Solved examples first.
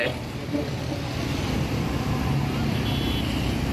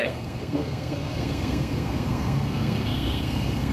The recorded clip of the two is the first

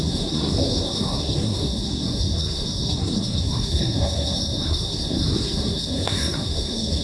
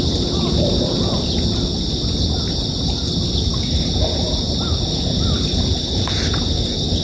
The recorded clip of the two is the second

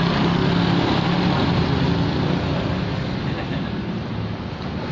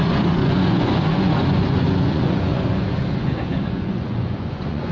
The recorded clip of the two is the first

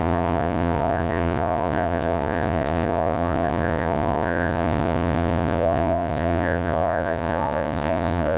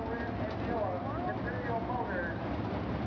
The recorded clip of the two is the second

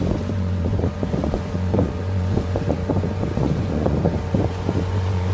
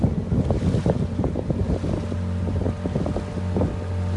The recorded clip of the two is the second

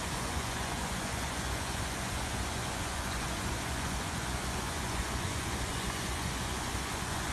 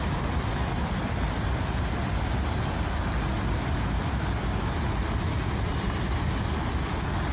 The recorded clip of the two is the second